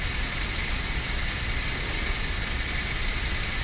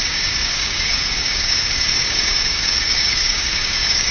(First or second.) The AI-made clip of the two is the second